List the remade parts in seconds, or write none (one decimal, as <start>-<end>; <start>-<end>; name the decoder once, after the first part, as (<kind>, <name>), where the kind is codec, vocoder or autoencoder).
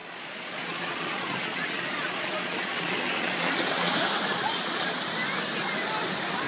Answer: 0.0-3.9 (vocoder, Vocos); 4.3-5.0